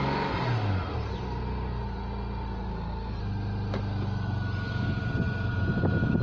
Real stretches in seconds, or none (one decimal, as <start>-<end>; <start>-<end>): 0.0-2.7; 3.2-6.2